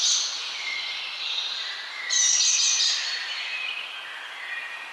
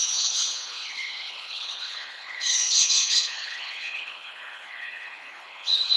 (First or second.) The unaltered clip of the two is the first